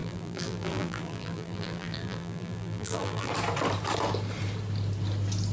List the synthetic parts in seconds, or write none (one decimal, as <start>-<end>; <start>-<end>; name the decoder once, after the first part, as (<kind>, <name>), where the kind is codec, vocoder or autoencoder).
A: 0.0-3.3 (vocoder, BigVGAN v2)